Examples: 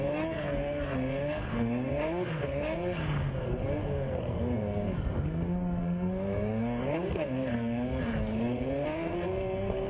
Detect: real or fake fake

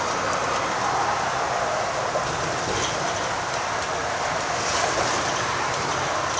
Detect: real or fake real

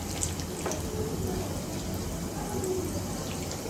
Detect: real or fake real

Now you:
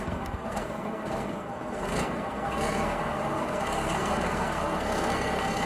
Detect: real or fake fake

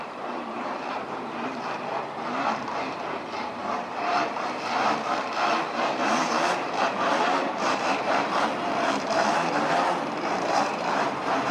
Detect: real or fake fake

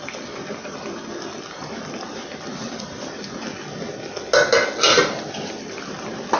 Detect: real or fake real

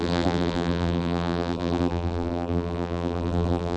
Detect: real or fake fake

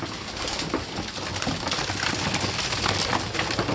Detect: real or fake real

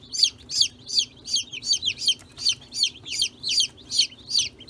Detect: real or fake real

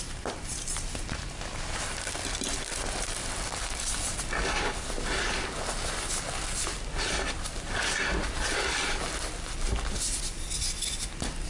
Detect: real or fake real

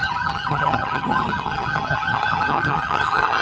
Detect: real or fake fake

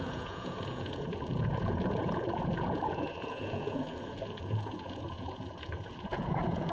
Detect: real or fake fake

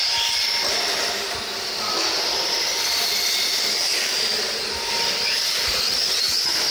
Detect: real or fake real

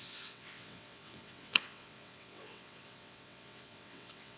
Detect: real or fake fake